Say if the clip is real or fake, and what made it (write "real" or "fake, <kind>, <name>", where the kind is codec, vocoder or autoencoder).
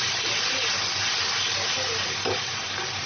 real